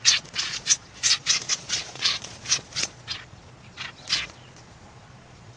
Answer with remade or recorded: remade